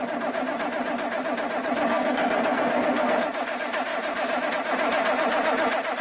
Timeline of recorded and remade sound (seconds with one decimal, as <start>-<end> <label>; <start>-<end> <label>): 0.0-1.9 recorded; 1.9-3.2 remade; 3.2-6.0 recorded